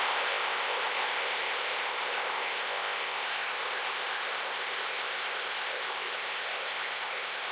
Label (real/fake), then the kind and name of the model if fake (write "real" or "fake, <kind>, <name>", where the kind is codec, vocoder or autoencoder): fake, codec, ZipCodec